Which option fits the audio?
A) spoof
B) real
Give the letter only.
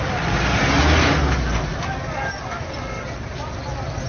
B